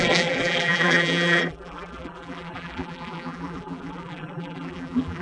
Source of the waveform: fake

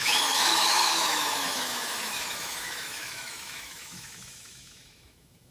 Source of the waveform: fake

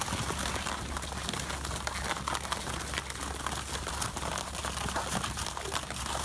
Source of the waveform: real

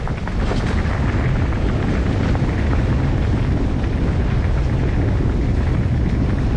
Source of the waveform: real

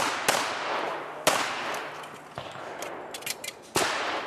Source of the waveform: real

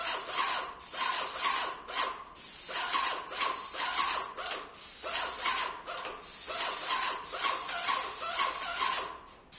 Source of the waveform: real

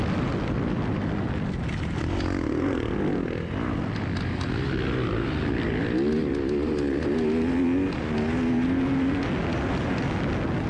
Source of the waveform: real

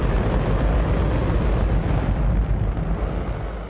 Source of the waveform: real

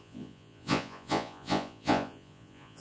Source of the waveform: fake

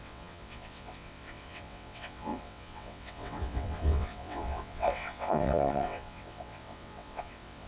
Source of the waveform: fake